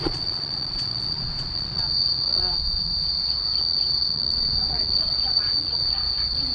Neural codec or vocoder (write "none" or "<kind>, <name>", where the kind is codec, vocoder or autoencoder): vocoder, Vocos